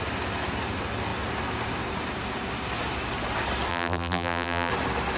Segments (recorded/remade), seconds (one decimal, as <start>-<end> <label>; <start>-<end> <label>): 0.0-3.7 recorded; 3.7-4.7 remade; 4.7-5.2 recorded